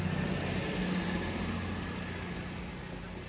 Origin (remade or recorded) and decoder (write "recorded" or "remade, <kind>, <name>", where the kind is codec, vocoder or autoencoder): recorded